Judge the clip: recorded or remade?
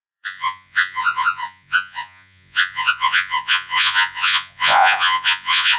remade